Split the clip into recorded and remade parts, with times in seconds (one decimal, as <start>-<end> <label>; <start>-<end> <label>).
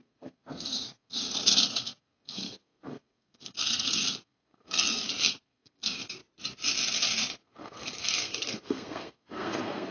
0.0-6.2 remade; 6.2-7.4 recorded; 7.4-9.9 remade